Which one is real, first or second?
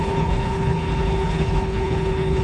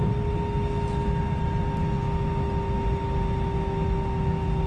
second